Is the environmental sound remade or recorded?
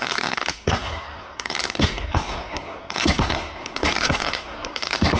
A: remade